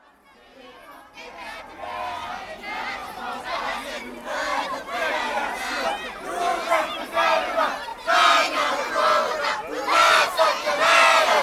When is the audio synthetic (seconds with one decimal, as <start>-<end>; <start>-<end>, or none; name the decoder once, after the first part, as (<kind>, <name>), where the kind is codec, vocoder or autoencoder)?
3.0-3.6 (vocoder, BigVGAN v2); 4.5-6.1